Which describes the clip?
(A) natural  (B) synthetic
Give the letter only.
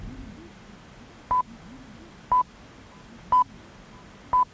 A